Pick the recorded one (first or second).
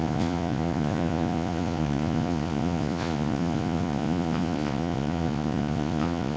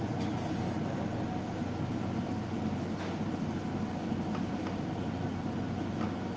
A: second